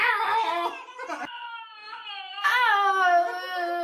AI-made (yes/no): no